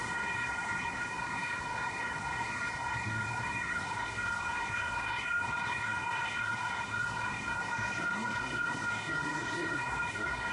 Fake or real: fake